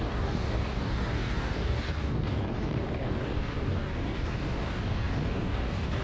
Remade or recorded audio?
remade